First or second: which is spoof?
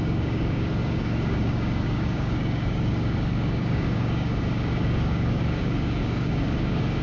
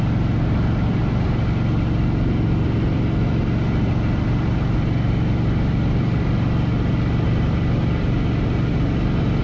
first